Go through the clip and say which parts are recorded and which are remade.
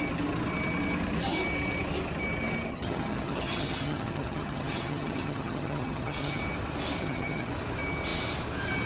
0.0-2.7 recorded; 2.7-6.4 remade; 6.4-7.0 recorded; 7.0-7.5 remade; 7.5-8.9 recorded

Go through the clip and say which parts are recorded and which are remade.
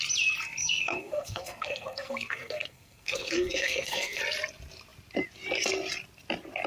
0.0-0.6 recorded; 0.6-4.2 remade; 4.2-6.7 recorded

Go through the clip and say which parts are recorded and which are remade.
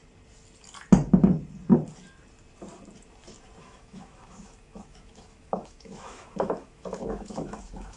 0.0-3.6 recorded; 3.6-8.0 remade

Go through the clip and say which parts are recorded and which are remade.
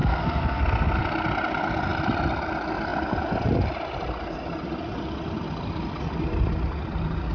0.0-1.0 remade; 1.0-7.3 recorded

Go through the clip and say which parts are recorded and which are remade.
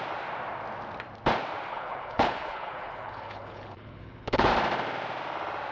0.0-1.7 recorded; 1.7-4.5 remade; 4.5-5.7 recorded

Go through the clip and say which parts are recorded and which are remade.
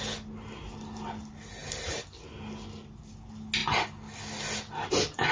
0.0-5.3 recorded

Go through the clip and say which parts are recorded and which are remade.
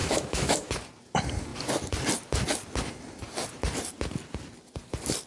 0.0-0.7 remade; 0.7-5.3 recorded